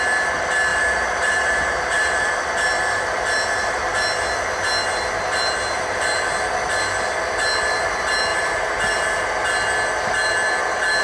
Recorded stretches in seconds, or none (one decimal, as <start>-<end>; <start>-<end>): 0.0-0.7; 2.3-8.3; 9.2-11.0